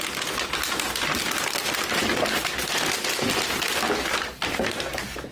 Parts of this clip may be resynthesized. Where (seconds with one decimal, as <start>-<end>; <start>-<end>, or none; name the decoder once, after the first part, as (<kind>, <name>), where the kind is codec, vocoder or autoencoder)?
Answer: none